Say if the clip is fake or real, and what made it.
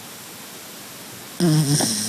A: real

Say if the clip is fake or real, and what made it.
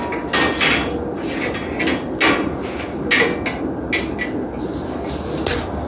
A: real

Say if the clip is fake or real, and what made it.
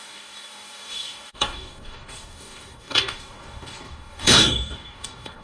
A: fake, codec, DAC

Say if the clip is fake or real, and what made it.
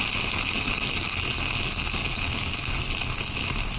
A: real